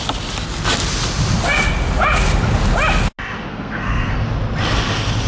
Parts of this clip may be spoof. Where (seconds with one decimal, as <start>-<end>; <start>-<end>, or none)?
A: 3.5-4.1